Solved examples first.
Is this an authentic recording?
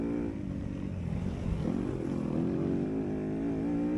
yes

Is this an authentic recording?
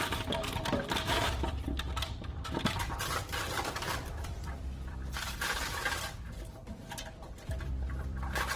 no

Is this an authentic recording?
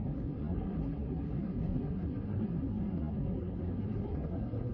no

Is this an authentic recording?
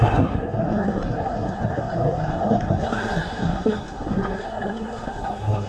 no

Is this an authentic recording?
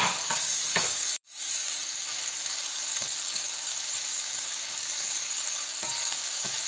no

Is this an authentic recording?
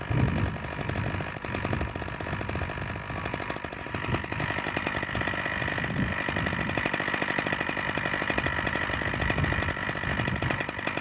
yes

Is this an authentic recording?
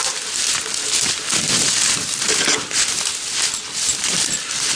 yes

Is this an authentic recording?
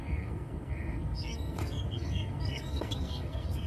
no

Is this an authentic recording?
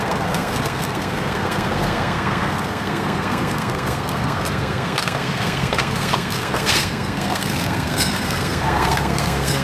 no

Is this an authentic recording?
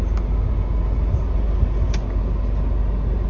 yes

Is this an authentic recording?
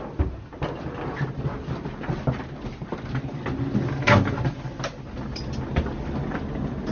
yes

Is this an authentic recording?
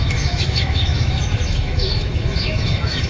no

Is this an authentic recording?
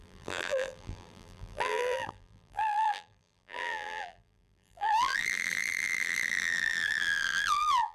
no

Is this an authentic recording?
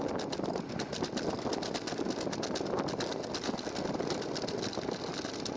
yes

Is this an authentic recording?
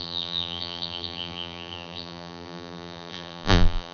no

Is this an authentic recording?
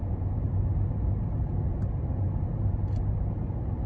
yes